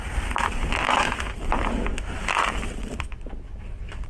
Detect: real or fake real